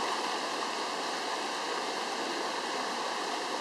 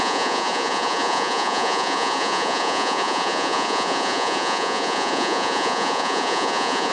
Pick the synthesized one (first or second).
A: second